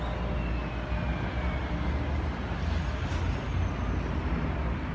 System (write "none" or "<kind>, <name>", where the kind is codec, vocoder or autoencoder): none